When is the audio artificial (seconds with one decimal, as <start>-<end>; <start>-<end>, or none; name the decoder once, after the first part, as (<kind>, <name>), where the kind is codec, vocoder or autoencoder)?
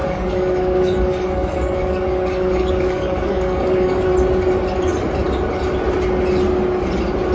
0.0-4.1 (codec, DAC)